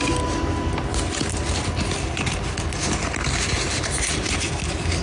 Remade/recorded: recorded